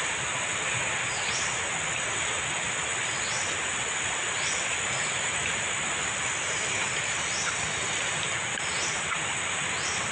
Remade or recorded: recorded